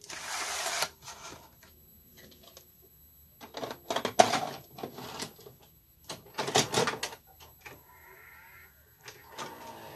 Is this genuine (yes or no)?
yes